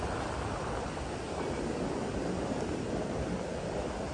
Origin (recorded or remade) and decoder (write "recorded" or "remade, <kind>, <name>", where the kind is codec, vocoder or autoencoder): recorded